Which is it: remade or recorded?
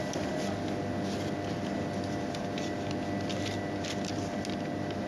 recorded